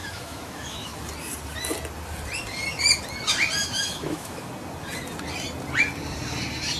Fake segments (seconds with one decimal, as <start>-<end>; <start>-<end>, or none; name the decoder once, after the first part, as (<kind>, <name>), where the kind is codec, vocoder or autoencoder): 0.0-1.0 (autoencoder, DAC-VAE); 3.6-4.5